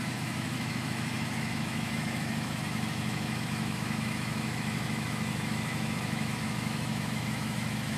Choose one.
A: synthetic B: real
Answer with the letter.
A